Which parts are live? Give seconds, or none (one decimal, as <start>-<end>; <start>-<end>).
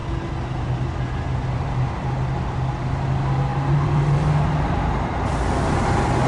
0.0-3.5; 4.3-5.3